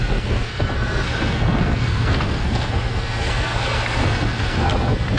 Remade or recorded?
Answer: remade